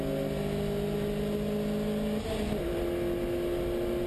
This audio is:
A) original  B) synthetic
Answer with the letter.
A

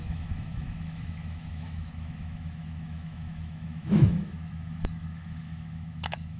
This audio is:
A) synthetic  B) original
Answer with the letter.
A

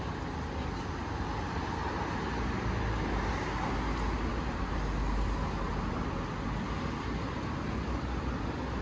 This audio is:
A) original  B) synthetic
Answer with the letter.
A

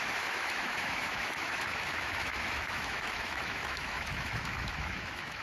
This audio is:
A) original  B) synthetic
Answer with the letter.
B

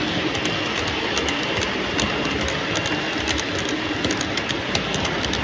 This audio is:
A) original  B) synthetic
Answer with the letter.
A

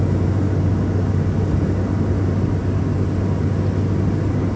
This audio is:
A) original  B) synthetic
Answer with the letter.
A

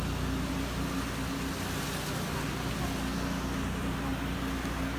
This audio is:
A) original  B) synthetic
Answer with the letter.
A